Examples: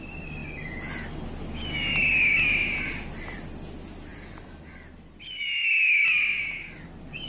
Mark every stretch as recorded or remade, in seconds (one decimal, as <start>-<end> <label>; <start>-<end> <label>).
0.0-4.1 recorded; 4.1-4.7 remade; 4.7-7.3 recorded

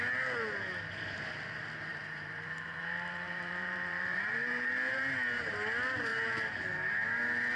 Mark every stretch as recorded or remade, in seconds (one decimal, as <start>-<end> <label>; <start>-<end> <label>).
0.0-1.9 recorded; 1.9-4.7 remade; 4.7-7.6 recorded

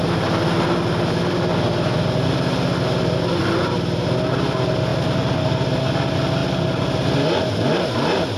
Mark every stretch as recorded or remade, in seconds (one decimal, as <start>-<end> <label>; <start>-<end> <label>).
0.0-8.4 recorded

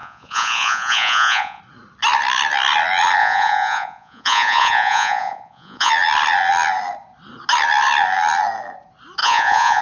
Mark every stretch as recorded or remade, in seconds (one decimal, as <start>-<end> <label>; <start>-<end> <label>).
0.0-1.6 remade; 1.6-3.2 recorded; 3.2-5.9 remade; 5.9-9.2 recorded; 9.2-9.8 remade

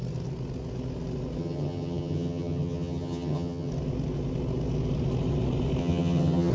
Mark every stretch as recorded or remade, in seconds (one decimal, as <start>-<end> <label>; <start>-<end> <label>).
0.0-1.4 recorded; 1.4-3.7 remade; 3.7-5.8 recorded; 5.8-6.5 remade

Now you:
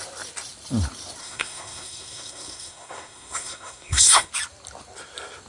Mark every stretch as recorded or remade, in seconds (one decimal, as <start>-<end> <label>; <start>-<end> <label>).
0.0-1.2 recorded; 1.2-4.3 remade; 4.3-5.5 recorded